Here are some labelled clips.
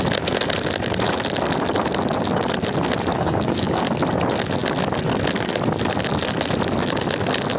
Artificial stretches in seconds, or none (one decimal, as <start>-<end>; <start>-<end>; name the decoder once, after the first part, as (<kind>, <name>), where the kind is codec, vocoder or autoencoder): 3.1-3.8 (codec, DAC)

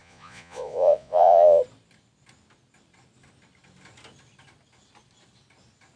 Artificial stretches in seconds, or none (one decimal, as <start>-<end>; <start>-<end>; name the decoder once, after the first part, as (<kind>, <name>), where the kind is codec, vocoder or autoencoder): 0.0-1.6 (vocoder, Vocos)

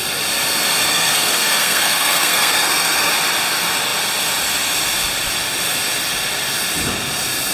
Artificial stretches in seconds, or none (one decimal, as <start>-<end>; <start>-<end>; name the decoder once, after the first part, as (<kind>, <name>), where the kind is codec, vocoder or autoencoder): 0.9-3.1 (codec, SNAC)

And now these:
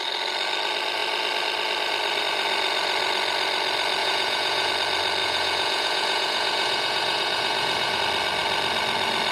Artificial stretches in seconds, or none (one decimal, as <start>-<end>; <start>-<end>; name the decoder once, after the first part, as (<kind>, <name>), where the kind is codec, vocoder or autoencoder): 4.0-4.7 (vocoder, Vocos); 5.2-8.0

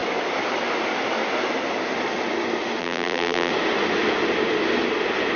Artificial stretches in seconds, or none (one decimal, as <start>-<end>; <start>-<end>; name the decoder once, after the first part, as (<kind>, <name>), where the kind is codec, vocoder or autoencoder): 2.8-3.5 (vocoder, BigVGAN v2)